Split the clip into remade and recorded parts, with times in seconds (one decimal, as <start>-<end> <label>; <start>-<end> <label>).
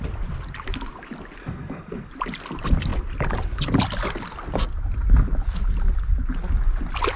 0.0-1.4 recorded; 1.4-2.1 remade; 2.1-7.2 recorded